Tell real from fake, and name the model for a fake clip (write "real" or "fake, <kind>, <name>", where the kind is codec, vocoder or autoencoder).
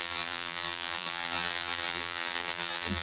fake, vocoder, BigVGAN v2